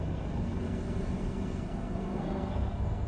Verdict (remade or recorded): remade